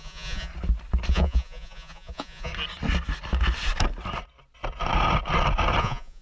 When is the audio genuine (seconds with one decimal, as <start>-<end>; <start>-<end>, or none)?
0.5-1.1; 2.5-5.8

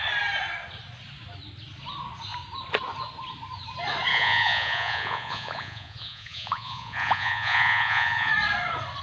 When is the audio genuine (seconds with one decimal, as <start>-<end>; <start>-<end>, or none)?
0.0-4.1; 8.3-9.0

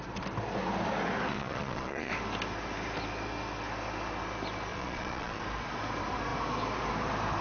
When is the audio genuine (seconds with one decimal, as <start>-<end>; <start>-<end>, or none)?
0.0-1.3; 2.1-4.7; 5.4-7.4

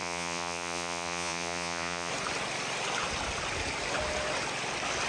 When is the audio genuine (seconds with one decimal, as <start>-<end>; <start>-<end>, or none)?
2.1-5.1

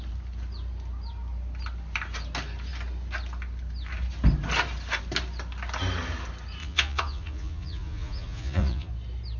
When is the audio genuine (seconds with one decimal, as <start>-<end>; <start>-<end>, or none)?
0.0-6.6; 8.9-9.4